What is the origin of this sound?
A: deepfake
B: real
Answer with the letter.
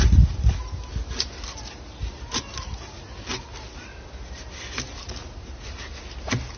B